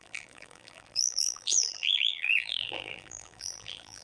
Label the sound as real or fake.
fake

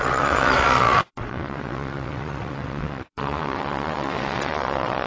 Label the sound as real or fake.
fake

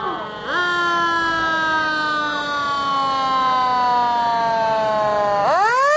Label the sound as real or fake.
real